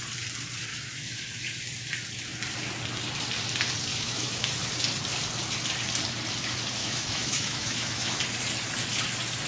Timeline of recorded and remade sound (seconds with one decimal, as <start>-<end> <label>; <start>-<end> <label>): 0.0-0.7 recorded; 0.7-1.6 remade; 1.6-3.9 recorded; 3.9-4.6 remade; 4.6-6.8 recorded; 6.8-8.2 remade; 8.2-9.5 recorded